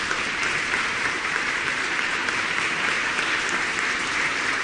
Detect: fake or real fake